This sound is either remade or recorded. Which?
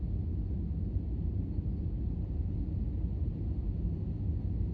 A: recorded